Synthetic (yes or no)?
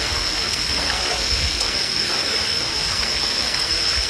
yes